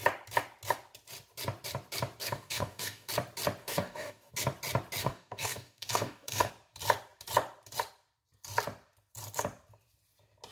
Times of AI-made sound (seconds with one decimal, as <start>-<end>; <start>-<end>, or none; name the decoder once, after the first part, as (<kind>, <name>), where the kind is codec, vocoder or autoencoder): 2.2-3.1 (codec, DAC); 3.6-4.3; 5.0-6.5